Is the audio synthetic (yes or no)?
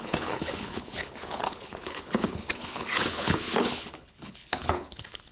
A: yes